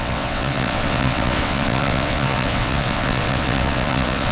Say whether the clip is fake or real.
fake